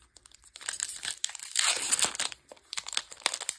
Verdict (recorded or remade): remade